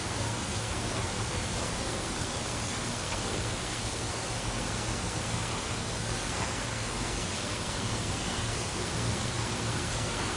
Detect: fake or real fake